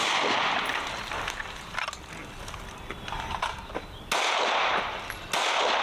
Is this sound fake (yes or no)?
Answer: no